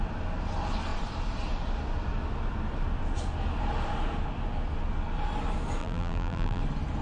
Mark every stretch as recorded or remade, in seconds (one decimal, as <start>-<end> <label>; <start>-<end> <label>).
0.0-5.8 recorded; 5.8-6.6 remade; 6.6-7.0 recorded